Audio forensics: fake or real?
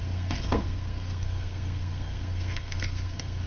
fake